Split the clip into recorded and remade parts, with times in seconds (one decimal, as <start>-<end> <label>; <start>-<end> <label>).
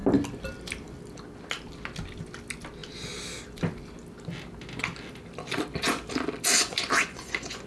0.0-6.5 recorded; 6.5-7.7 remade